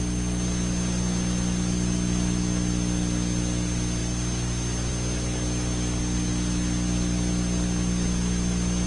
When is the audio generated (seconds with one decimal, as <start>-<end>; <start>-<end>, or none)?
none